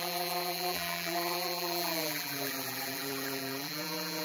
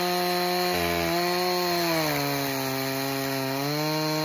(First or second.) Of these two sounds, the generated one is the first